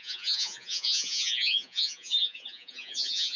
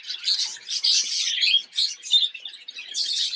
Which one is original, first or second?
second